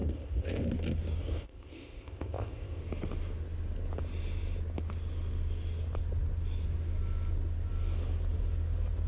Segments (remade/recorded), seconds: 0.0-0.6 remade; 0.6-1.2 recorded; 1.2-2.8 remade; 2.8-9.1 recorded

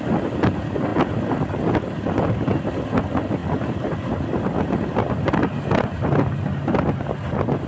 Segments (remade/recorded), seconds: 0.0-7.7 recorded

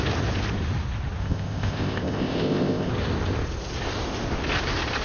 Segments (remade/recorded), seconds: 0.0-1.2 recorded; 1.2-2.9 remade; 2.9-5.0 recorded

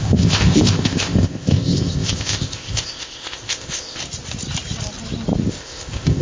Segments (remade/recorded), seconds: 0.0-4.0 remade; 4.0-5.5 recorded; 5.5-6.2 remade

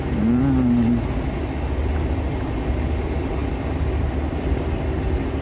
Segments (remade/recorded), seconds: 0.0-5.4 recorded